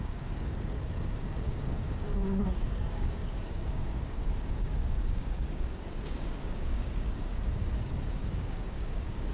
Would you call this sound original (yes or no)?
no